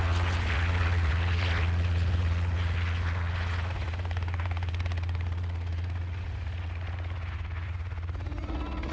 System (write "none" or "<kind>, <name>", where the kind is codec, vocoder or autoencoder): vocoder, Vocos